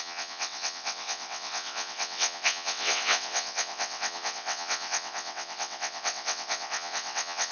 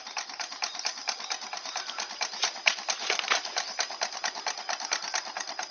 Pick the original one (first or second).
second